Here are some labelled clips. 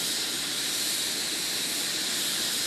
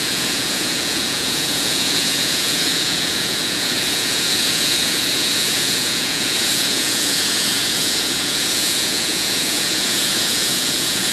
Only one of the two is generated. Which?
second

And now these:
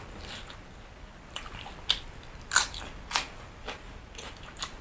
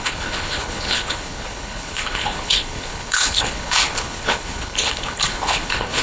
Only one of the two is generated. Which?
second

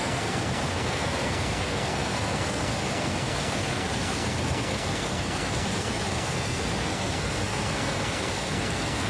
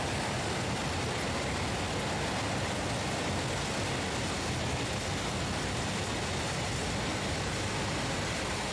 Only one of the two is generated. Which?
first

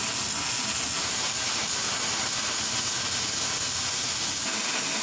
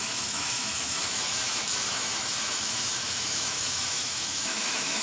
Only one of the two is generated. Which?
second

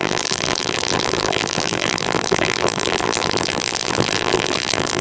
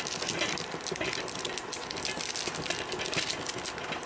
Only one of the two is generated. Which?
first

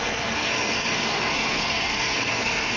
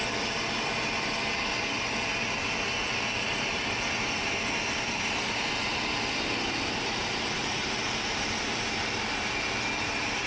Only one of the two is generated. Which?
first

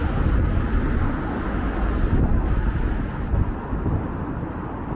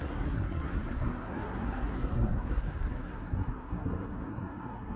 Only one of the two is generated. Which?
second